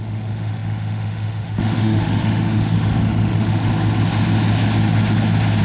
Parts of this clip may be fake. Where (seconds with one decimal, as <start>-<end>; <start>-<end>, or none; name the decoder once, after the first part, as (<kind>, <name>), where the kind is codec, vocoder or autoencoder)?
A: 0.0-3.7 (autoencoder, DAC-VAE)